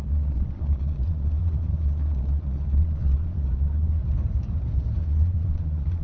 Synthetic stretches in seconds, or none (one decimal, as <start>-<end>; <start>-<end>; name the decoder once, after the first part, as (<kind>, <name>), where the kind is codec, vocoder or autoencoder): 0.0-4.0 (vocoder, Vocos); 5.0-6.0